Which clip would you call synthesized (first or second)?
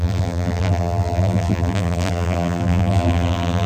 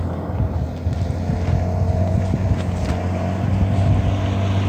first